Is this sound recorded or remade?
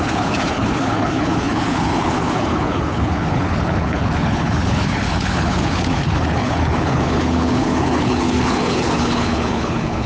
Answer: remade